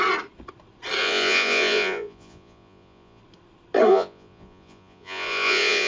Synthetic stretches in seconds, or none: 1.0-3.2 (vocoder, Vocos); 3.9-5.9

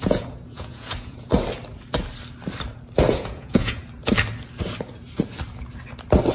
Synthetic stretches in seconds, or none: 0.0-1.3 (vocoder, Vocos); 3.1-3.8

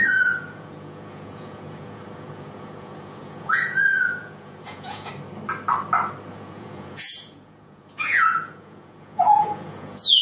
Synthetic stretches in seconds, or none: 0.0-5.1 (vocoder, Vocos); 6.3-10.2

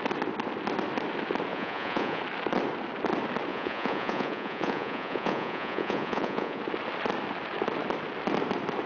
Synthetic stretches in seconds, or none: 1.5-2.2 (vocoder, Vocos); 3.5-6.6